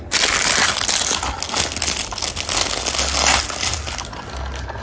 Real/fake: real